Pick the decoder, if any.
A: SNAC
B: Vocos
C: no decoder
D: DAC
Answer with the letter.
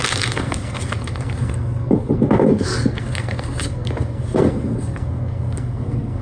A